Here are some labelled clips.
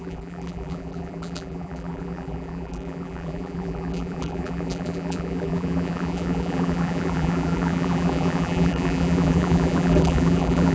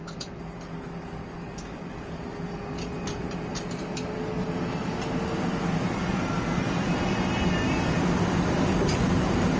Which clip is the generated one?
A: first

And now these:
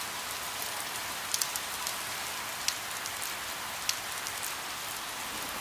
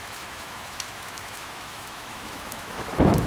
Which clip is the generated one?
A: second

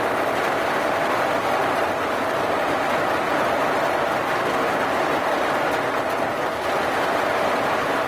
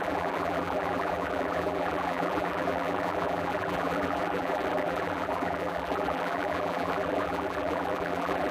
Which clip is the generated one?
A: second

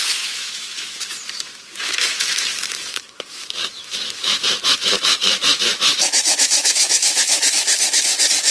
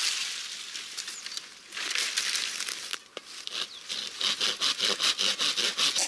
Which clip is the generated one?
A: first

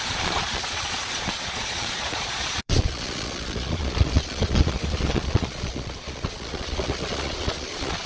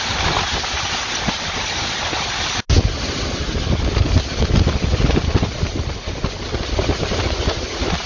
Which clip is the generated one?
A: first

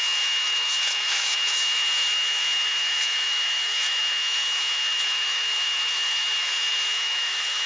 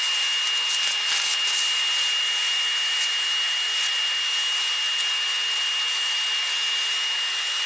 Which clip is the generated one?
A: first